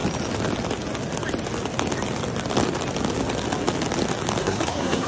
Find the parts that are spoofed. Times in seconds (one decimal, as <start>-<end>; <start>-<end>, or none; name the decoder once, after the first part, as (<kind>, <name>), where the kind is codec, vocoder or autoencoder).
4.4-5.1 (codec, SNAC)